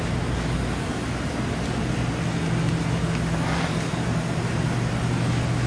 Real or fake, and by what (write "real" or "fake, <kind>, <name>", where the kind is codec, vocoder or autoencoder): real